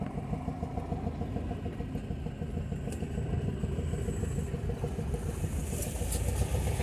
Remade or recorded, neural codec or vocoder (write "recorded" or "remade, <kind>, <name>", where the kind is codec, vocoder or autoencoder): recorded